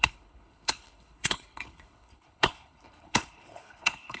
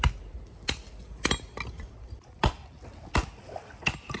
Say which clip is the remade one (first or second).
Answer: first